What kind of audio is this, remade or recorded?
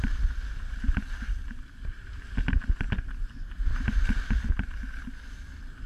recorded